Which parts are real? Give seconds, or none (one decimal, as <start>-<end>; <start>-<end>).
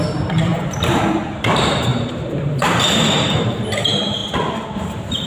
0.5-1.3; 4.2-4.7